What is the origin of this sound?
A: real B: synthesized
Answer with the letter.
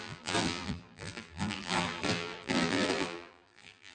B